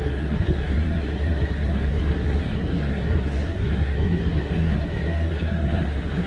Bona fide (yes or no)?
no